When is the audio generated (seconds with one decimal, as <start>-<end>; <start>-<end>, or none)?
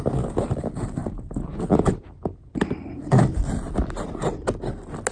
none